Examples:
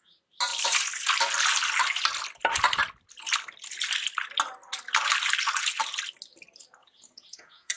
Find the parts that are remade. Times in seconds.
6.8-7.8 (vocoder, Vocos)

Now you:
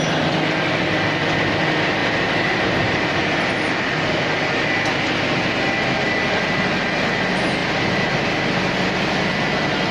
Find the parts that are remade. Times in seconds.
2.0-3.5 (vocoder, BigVGAN v2); 7.6-8.2

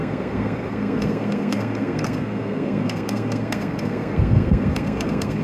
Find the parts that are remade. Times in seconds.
0.0-5.4 (codec, SNAC)